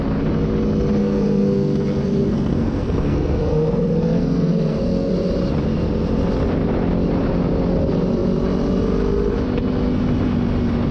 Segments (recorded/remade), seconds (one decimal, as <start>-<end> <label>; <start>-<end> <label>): 0.0-1.0 recorded; 1.0-5.1 remade; 5.1-10.9 recorded